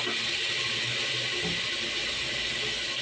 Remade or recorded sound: recorded